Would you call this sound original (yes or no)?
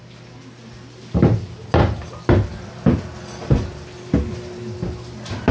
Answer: yes